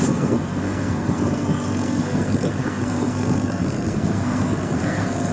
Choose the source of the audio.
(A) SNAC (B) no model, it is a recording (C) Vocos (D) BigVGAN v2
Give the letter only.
A